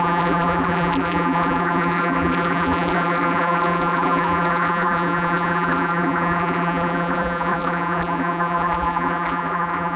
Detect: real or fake fake